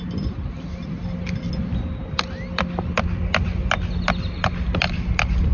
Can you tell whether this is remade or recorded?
recorded